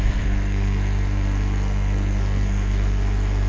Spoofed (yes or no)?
yes